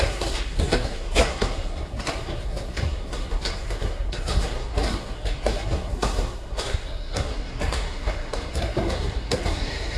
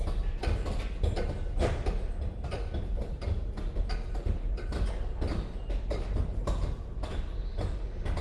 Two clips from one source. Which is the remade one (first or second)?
first